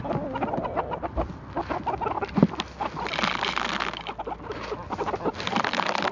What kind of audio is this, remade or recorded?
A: recorded